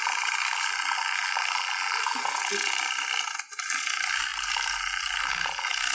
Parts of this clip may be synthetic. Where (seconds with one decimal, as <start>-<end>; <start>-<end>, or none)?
none